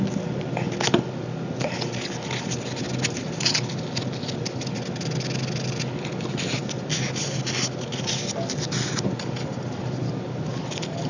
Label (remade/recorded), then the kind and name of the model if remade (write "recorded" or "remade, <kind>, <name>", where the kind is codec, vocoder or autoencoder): recorded